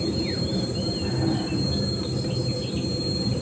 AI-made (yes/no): no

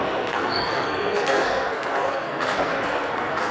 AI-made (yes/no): yes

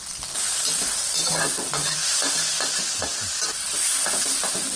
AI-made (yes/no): no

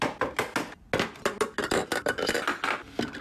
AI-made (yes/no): no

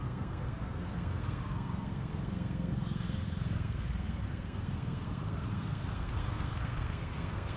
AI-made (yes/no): yes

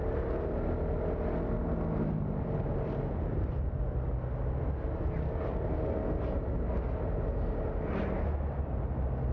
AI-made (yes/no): no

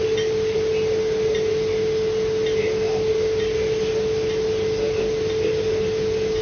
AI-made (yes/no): no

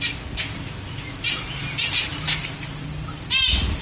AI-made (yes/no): no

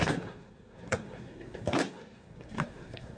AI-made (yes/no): yes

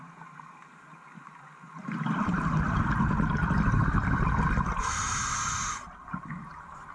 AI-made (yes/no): no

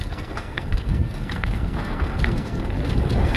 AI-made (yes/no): yes